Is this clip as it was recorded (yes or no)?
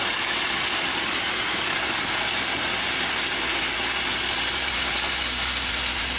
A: yes